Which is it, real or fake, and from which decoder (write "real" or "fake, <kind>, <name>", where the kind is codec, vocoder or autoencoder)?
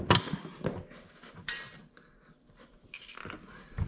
real